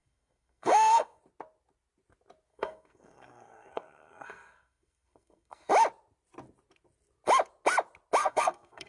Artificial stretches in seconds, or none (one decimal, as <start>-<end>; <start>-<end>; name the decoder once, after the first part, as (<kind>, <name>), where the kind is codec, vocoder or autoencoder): 0.0-1.2 (codec, SNAC); 2.5-5.7; 8.2-8.9